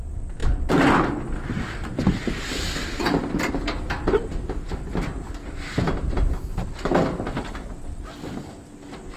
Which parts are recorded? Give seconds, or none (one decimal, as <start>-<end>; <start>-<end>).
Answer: 0.0-9.2